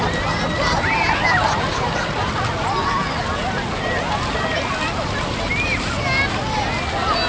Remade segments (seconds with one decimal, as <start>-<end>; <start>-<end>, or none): 1.7-2.5; 4.5-5.5